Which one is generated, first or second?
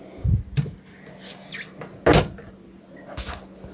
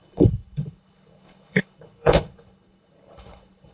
second